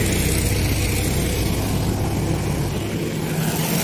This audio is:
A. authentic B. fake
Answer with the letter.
A